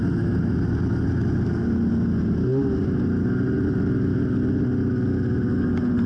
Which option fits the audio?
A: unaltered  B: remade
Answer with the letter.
A